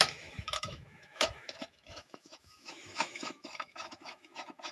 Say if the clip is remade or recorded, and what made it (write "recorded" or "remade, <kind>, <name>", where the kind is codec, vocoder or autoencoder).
remade, autoencoder, DAC-VAE